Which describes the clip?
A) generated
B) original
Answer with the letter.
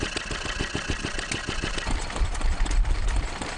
B